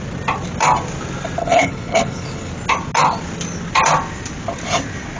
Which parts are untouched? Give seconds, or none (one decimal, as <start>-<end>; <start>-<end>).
0.0-1.4; 2.5-5.2